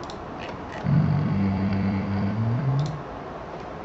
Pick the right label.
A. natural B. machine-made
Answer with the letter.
B